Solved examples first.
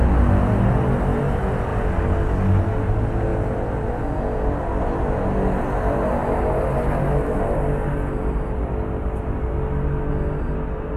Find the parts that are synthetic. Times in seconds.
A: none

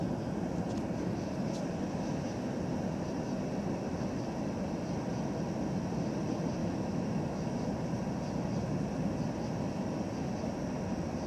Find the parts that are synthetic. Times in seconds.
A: 6.6-7.7

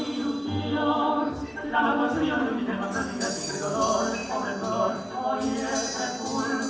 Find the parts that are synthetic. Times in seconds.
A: 1.4-3.8